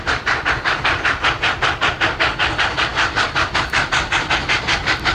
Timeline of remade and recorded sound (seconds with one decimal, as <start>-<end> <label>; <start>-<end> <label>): 0.0-5.1 recorded